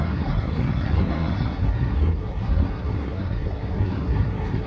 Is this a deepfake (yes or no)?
yes